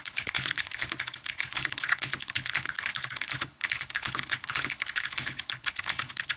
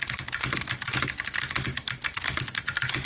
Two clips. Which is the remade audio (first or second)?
first